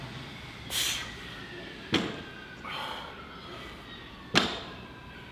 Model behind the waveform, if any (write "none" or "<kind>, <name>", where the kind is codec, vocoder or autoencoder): none